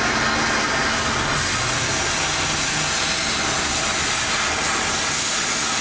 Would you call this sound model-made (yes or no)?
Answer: no